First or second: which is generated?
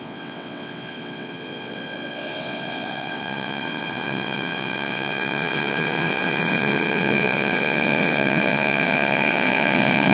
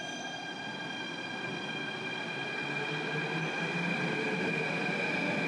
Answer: first